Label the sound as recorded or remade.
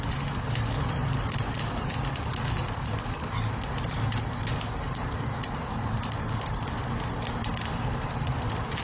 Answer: recorded